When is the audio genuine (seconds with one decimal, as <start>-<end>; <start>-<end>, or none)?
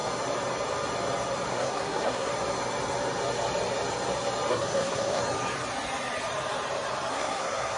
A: 0.0-1.5; 2.3-4.5; 5.2-7.1